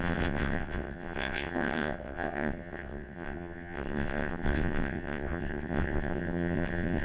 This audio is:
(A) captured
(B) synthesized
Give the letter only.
B